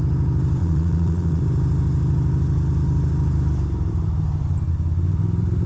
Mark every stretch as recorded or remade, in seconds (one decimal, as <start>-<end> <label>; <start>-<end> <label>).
0.0-0.6 recorded; 0.6-1.4 remade; 1.4-5.7 recorded